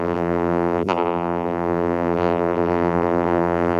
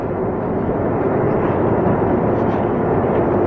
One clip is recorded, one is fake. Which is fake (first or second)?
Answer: first